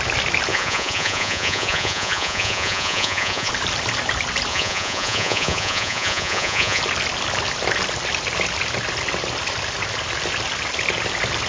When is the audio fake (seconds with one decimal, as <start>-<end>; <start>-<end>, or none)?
0.5-3.5; 4.5-6.8